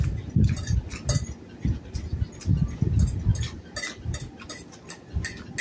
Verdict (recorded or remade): recorded